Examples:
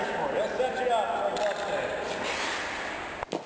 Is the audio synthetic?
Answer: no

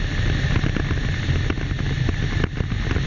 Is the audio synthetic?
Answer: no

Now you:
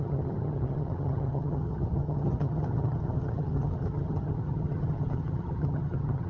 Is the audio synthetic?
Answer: yes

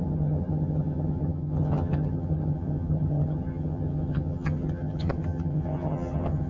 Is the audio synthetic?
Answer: yes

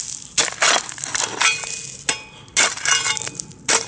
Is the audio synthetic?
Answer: no